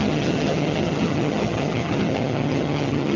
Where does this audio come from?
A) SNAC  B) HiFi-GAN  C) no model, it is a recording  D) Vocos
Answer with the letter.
B